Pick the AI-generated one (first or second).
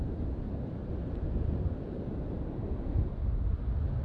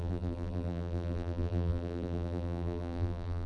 second